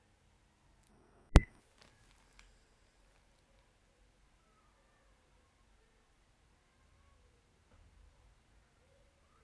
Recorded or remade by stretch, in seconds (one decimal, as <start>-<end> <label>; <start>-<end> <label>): 0.0-0.9 recorded; 0.9-1.6 remade; 1.6-9.4 recorded